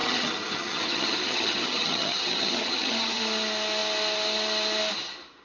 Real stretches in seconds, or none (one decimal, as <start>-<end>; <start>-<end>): 3.2-5.4